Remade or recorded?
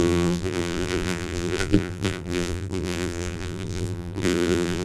remade